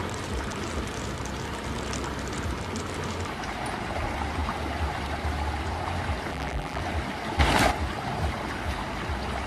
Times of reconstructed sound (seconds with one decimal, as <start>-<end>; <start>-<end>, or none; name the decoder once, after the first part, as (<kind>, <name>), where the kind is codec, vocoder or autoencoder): 6.3-6.8 (vocoder, BigVGAN v2)